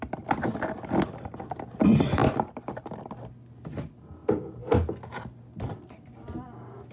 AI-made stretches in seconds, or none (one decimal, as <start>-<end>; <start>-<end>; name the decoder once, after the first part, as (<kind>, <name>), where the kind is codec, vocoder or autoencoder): none